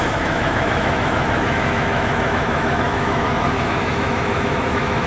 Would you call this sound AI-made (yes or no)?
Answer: yes